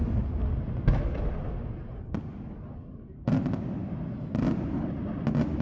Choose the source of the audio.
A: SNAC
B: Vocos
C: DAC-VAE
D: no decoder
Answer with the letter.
D